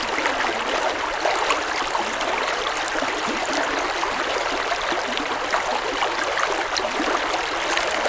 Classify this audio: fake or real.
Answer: real